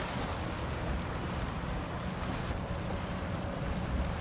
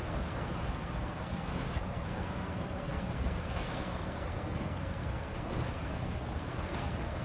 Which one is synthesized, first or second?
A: second